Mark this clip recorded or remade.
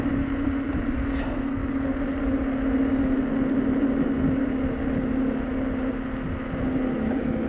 recorded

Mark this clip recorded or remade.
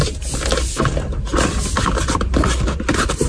recorded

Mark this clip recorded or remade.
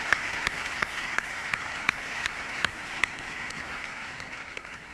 remade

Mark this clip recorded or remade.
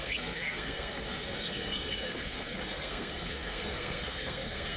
remade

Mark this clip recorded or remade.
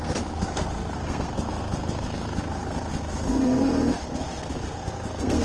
remade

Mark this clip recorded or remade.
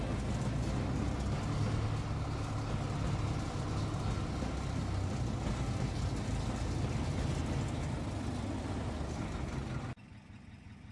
recorded